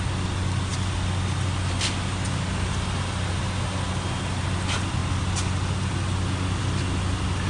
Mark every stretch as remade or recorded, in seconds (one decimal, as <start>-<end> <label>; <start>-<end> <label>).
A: 0.0-7.5 recorded